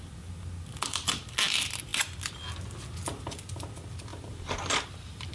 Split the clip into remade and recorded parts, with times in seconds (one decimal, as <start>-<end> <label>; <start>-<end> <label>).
0.0-4.1 recorded; 4.1-5.3 remade